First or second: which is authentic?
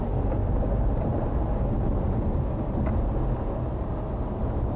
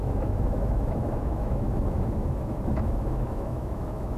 first